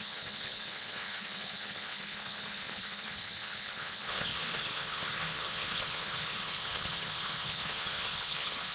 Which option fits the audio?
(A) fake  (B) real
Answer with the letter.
A